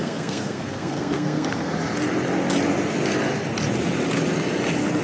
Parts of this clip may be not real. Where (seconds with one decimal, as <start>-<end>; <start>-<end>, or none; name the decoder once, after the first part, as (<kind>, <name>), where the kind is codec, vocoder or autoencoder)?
0.0-1.5 (codec, SNAC)